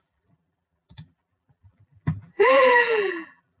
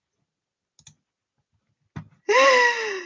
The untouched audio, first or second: second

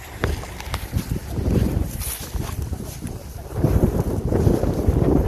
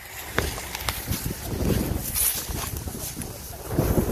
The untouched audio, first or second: second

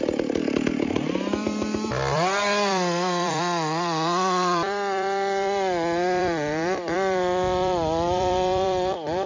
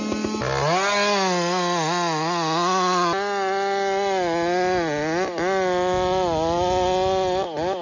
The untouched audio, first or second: second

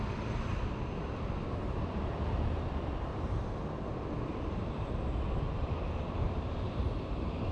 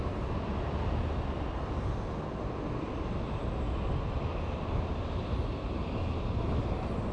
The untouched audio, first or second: second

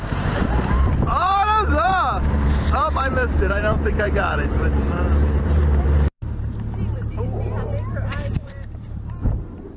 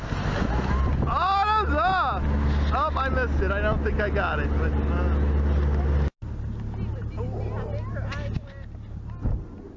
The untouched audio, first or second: second